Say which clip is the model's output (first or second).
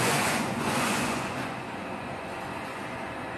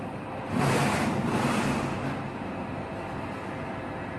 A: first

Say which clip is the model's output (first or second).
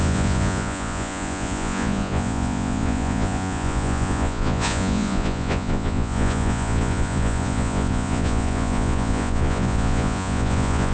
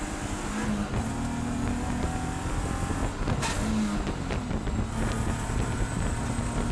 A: first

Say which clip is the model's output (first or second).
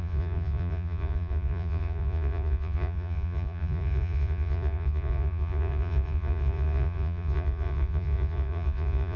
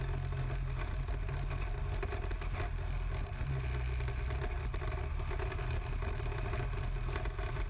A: first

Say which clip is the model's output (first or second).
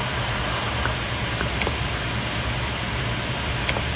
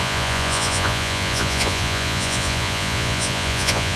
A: second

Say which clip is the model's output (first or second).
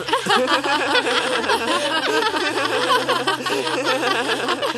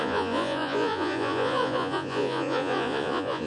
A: second